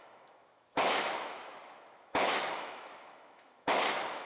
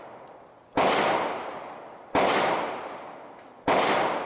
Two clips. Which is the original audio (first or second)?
second